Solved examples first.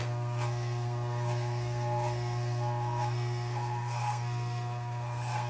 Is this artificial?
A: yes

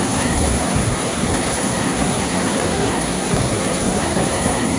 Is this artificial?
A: yes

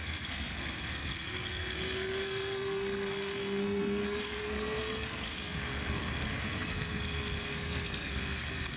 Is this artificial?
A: yes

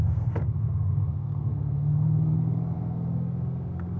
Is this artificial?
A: yes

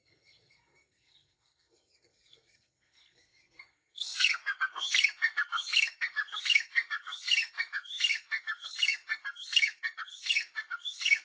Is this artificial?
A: yes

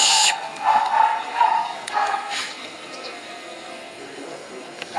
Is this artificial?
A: yes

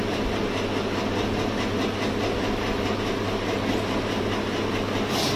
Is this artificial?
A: no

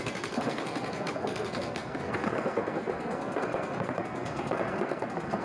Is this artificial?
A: yes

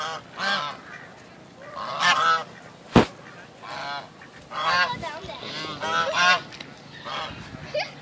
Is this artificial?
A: no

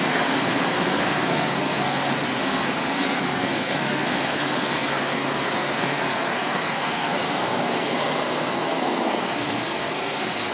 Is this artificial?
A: yes